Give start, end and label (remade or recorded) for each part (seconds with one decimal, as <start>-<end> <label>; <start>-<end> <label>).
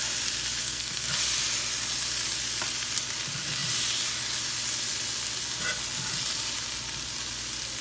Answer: 0.0-0.6 recorded; 0.6-1.1 remade; 1.1-7.8 recorded